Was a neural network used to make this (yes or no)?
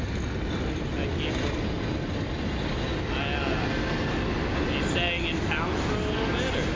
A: no